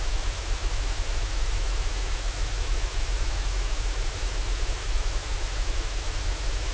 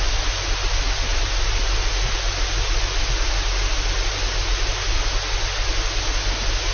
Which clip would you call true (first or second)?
second